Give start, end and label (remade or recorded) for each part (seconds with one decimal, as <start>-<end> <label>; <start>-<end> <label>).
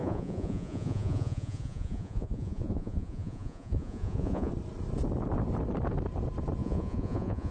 0.0-4.5 remade; 4.5-6.6 recorded; 6.6-7.5 remade